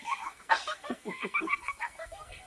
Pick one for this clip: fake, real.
fake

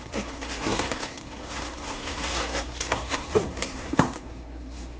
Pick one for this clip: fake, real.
fake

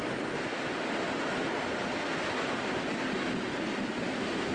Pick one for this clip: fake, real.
real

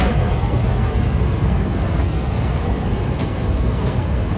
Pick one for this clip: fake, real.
fake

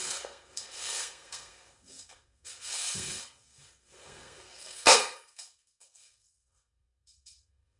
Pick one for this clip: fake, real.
fake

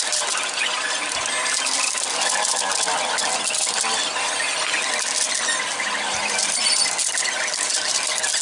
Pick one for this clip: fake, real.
real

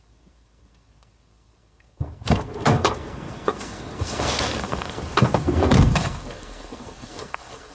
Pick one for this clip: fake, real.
fake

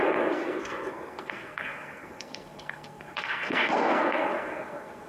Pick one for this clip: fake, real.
fake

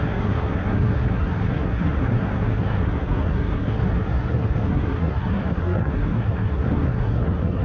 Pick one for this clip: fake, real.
fake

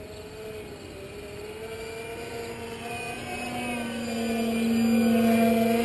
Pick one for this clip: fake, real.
real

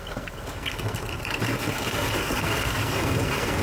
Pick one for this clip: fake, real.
fake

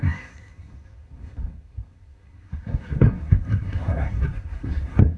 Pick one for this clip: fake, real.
fake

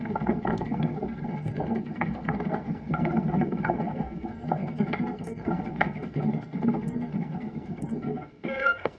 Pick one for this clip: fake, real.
fake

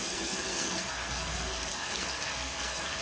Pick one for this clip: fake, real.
fake